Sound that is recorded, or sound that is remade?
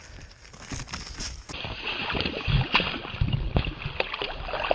recorded